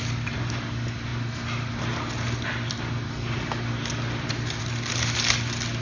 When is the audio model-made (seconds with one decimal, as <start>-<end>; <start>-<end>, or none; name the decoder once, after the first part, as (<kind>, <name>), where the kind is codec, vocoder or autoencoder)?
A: none

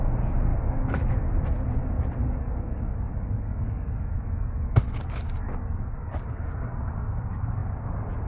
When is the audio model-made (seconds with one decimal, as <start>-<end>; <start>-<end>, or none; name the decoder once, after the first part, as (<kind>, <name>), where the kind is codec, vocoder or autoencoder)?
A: 0.5-1.1 (codec, DAC); 2.2-6.4